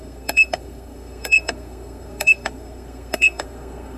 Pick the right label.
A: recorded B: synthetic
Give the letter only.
B